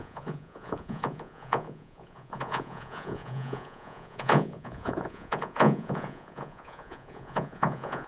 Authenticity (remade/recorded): remade